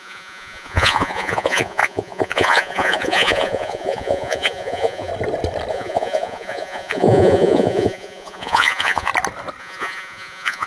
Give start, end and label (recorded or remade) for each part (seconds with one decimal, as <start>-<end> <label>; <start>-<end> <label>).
0.0-5.1 remade; 5.1-5.7 recorded; 5.7-9.1 remade; 9.1-9.6 recorded; 9.6-10.7 remade